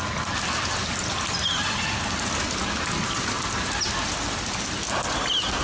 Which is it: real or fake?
real